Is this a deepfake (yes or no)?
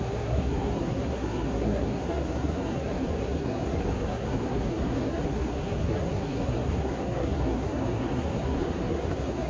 yes